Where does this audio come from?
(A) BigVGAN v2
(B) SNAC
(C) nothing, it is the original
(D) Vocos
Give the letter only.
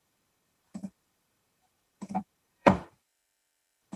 A